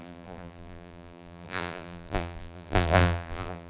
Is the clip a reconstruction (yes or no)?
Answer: yes